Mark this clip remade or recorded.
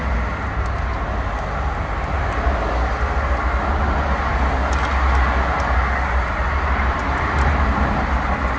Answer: recorded